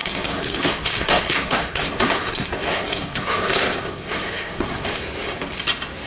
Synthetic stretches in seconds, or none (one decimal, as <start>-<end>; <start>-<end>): 0.0-5.0